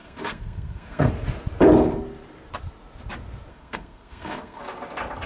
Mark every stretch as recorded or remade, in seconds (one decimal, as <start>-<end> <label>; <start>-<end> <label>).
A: 0.0-1.1 remade; 1.1-3.5 recorded; 3.5-4.6 remade; 4.6-5.3 recorded